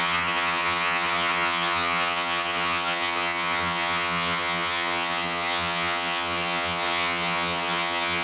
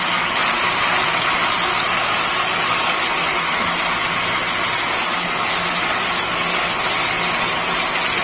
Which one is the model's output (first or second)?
first